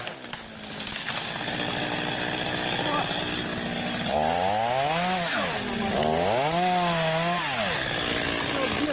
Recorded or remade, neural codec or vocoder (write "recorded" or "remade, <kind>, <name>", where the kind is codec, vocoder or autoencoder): recorded